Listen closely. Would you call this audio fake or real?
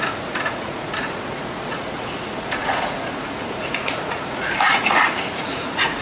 fake